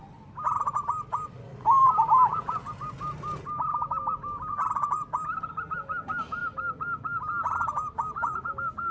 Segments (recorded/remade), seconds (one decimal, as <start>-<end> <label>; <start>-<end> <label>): 0.0-8.9 recorded